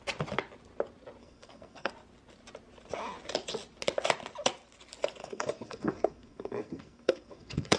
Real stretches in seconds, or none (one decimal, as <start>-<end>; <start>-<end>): 0.0-1.2; 1.9-5.2